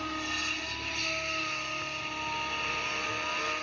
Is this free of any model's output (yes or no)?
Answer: yes